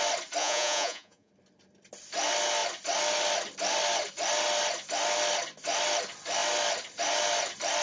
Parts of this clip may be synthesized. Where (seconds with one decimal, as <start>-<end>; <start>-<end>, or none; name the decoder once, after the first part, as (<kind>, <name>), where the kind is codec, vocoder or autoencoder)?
0.4-1.3 (vocoder, Vocos)